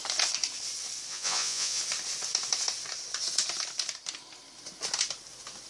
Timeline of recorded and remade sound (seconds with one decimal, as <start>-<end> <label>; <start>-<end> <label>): 0.0-1.1 recorded; 1.1-1.8 remade; 1.8-5.7 recorded